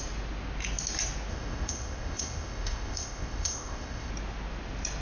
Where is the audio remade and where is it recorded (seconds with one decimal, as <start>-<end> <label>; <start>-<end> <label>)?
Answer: 0.0-1.3 recorded; 1.3-4.1 remade; 4.1-5.0 recorded